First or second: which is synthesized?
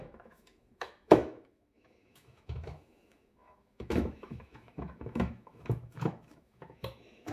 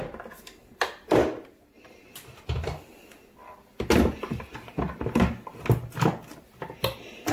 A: first